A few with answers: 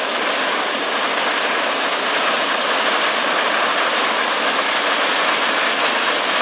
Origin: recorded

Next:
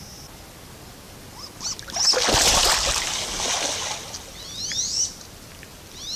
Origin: recorded